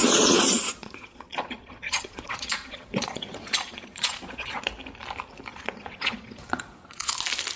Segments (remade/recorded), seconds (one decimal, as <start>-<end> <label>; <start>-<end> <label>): 0.0-4.6 remade; 4.6-5.5 recorded; 5.5-7.1 remade; 7.1-7.6 recorded